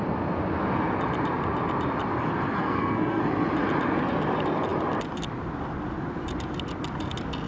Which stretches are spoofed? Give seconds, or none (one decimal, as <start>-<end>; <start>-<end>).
2.6-3.2